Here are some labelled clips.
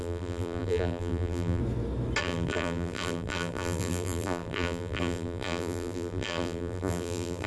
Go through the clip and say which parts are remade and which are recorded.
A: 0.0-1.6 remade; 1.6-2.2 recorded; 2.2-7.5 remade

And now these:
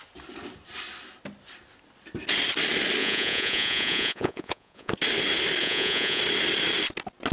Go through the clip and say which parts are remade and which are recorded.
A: 0.0-3.0 recorded; 3.0-4.9 remade; 4.9-5.6 recorded; 5.6-6.2 remade; 6.2-7.3 recorded